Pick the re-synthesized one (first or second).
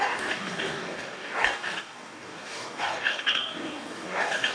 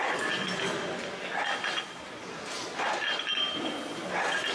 first